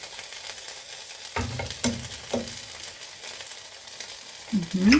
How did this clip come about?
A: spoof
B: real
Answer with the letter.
B